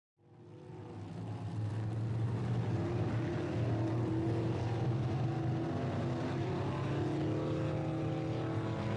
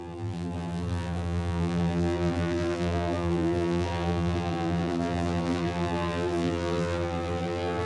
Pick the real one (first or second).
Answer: first